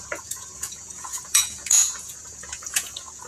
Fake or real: fake